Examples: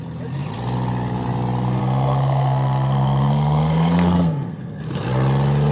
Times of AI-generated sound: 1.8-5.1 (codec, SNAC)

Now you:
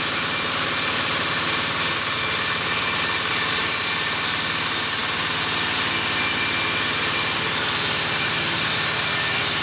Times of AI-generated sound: none

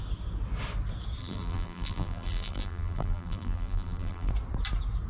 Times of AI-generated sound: 1.2-4.3 (vocoder, BigVGAN v2)

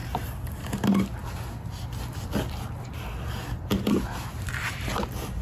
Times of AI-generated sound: none